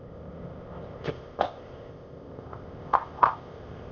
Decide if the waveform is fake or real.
fake